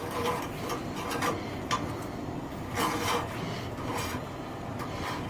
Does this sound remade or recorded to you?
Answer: remade